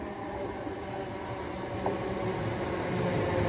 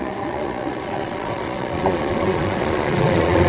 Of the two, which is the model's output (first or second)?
second